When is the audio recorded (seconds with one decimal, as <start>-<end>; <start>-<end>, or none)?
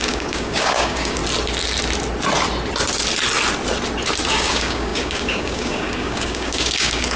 1.2-4.3